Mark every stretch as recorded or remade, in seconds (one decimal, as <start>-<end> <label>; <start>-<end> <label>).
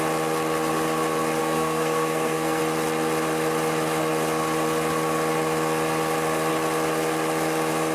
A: 0.0-1.4 recorded; 1.4-2.6 remade; 2.6-7.9 recorded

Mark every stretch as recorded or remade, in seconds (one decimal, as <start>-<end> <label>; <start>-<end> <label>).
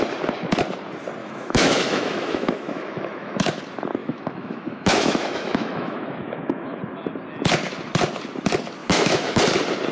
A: 0.0-1.2 recorded; 1.2-3.6 remade; 3.6-4.0 recorded; 4.0-6.8 remade; 6.8-8.8 recorded; 8.8-9.4 remade; 9.4-9.9 recorded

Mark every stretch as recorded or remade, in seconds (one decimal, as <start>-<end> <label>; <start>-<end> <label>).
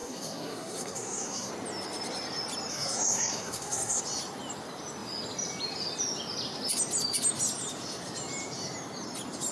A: 0.0-1.5 remade; 1.5-2.7 recorded; 2.7-4.0 remade; 4.0-9.5 recorded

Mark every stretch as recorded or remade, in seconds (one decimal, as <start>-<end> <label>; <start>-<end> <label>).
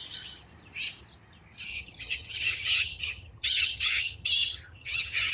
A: 0.0-1.7 recorded; 1.7-5.3 remade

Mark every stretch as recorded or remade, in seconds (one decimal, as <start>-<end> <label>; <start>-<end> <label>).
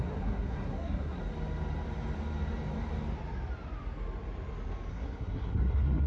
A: 0.0-1.2 remade; 1.2-4.9 recorded; 4.9-6.1 remade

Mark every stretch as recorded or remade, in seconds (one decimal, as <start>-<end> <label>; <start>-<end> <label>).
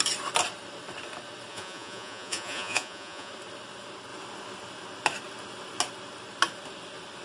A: 0.0-1.5 recorded; 1.5-3.3 remade; 3.3-7.2 recorded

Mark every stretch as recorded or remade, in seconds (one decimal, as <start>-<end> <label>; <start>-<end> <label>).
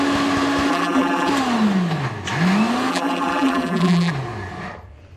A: 0.0-0.7 recorded; 0.7-1.3 remade; 1.3-2.9 recorded; 2.9-4.1 remade; 4.1-5.2 recorded